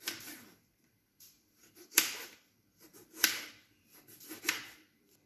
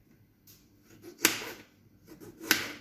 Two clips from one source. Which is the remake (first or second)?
first